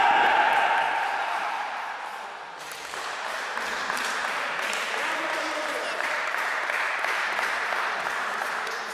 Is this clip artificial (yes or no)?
yes